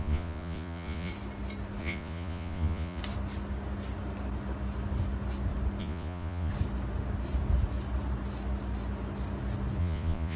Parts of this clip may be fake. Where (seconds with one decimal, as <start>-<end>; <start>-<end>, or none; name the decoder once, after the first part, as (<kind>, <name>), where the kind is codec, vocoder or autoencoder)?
0.0-1.1 (vocoder, Vocos); 1.8-3.0; 5.8-6.5; 9.8-10.4